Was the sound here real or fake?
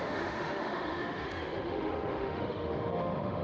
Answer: fake